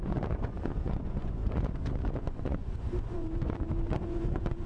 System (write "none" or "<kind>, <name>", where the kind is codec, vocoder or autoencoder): vocoder, Vocos